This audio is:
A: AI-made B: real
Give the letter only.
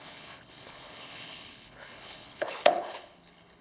A